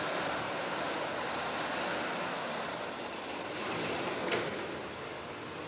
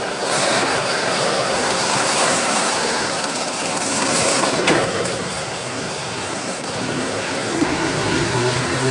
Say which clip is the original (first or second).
first